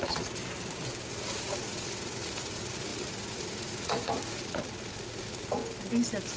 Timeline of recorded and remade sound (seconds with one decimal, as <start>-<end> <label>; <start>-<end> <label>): 0.0-0.4 remade; 0.4-1.1 recorded; 1.1-5.6 remade; 5.6-6.4 recorded